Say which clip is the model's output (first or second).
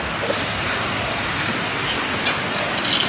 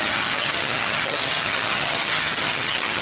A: second